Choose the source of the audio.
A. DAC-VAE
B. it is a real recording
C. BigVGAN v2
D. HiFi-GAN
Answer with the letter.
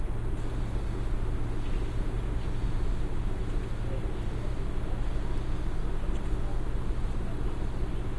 B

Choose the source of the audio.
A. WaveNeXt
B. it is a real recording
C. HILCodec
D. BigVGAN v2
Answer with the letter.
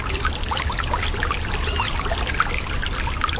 B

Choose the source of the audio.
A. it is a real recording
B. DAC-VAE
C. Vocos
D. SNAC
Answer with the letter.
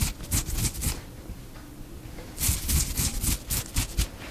A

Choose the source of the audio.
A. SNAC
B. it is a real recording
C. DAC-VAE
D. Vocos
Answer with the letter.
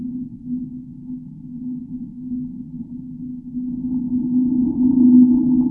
B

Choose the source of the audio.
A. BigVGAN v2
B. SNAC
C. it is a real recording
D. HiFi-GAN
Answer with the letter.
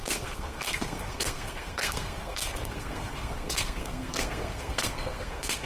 B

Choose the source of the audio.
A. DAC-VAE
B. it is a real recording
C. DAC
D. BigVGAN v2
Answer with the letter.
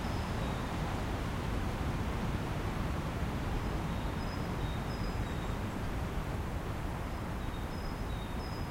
D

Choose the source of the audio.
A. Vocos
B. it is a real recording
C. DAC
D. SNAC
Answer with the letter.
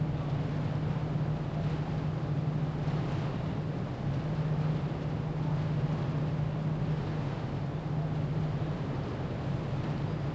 B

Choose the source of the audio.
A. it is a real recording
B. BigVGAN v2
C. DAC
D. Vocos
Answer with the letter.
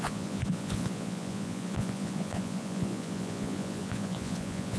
D